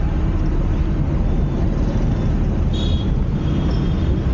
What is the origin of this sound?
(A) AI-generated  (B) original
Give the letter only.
B